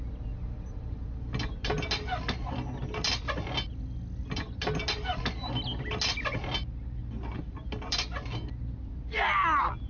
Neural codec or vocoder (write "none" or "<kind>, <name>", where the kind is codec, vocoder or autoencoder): none